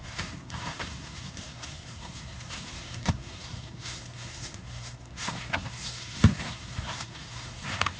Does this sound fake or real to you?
fake